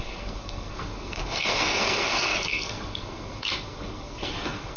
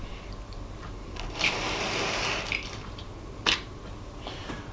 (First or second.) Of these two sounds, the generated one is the first